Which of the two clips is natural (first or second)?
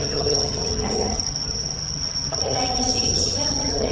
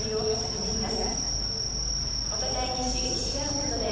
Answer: second